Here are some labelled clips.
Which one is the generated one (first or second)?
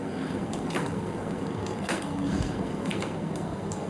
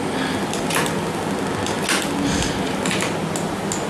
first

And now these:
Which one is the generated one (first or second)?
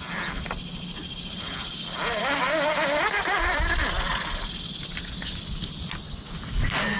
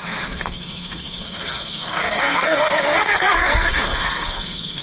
second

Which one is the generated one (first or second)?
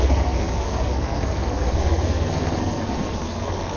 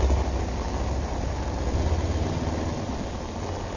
first